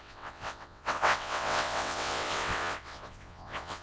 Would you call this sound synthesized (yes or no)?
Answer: yes